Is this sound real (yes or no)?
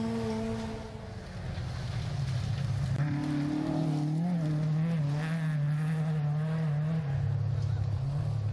yes